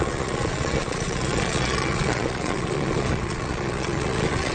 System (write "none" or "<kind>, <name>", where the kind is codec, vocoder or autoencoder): vocoder, Vocos